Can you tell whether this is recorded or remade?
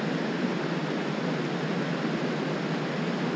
recorded